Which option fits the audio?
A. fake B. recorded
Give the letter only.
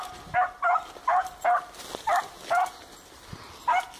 B